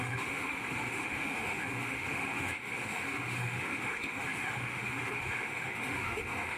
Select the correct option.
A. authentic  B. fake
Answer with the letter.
B